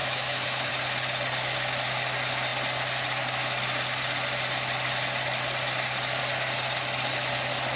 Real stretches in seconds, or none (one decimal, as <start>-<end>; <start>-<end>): 0.7-7.8